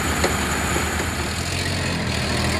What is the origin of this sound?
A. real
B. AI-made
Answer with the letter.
A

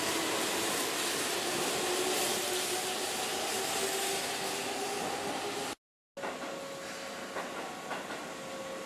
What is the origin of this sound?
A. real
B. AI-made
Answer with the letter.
A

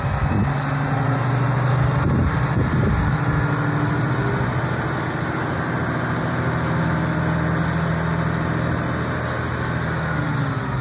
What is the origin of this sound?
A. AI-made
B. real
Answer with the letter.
B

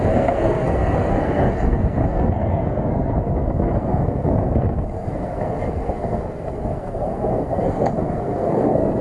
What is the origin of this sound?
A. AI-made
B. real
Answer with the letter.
A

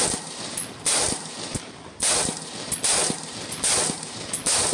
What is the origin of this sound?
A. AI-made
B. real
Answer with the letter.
B